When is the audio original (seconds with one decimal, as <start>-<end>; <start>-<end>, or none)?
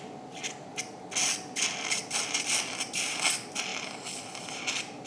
0.0-5.1